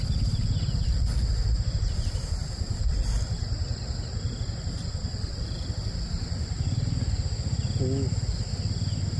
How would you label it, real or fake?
real